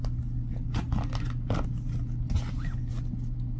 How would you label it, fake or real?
real